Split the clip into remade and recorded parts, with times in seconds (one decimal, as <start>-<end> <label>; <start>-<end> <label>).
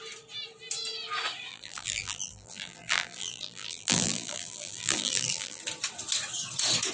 0.0-1.5 recorded; 1.5-5.6 remade; 5.6-6.9 recorded